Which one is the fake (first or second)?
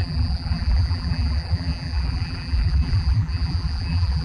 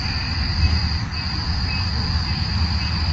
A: first